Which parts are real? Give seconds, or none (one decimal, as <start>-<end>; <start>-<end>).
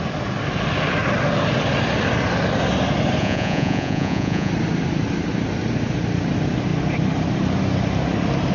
0.0-3.2; 4.5-8.5